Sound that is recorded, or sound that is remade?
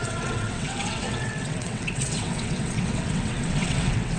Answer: remade